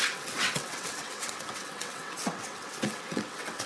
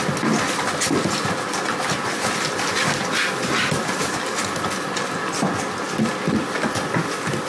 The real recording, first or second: second